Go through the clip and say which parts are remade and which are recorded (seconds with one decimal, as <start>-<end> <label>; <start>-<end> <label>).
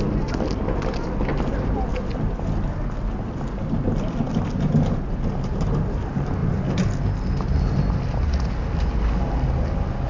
0.0-10.1 recorded